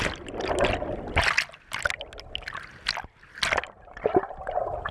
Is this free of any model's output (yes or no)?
yes